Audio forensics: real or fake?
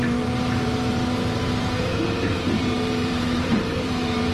fake